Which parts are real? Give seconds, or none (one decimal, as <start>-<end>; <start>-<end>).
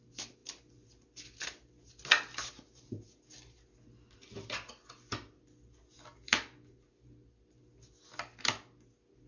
0.0-9.3